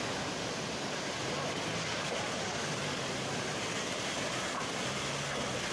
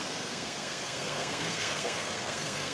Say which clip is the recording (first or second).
first